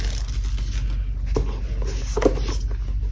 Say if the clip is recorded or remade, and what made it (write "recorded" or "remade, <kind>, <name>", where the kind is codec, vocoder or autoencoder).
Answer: recorded